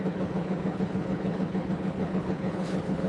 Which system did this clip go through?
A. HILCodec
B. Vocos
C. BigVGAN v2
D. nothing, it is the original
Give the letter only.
A